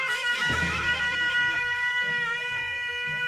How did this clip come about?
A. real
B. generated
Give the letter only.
B